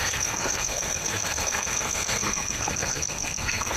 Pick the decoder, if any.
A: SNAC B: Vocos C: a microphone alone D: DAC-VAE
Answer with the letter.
A